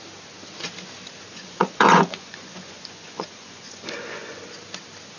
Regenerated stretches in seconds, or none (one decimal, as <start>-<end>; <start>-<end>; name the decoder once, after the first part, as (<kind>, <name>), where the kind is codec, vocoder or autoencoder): 1.3-4.4 (vocoder, Vocos)